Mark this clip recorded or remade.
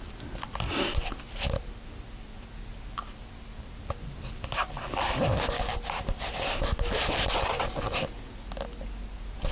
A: recorded